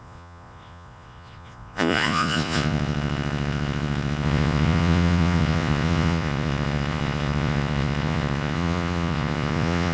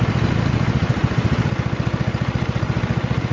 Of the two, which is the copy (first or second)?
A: first